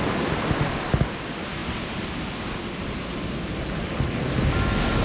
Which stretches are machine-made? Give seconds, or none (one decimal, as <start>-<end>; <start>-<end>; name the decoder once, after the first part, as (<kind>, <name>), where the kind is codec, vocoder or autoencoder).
none